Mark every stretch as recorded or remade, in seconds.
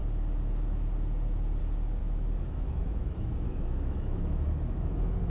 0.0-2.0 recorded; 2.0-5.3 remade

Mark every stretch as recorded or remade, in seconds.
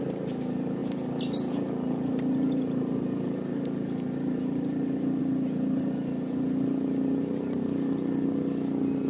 0.0-9.1 recorded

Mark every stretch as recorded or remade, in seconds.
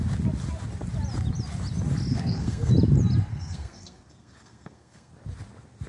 0.0-2.1 recorded; 2.1-2.7 remade; 2.7-3.3 recorded; 3.3-5.1 remade; 5.1-5.9 recorded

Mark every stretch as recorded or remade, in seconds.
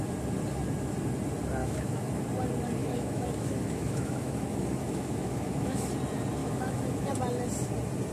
0.0-1.6 recorded; 1.6-2.2 remade; 2.2-2.8 recorded; 2.8-5.9 remade; 5.9-6.4 recorded; 6.4-7.1 remade; 7.1-8.1 recorded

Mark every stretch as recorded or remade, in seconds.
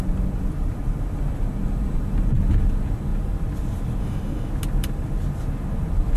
0.0-4.0 recorded; 4.0-4.5 remade; 4.5-6.2 recorded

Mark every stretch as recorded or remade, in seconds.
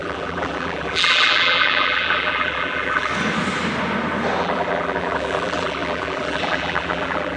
0.0-3.1 remade; 3.1-4.4 recorded; 4.4-7.4 remade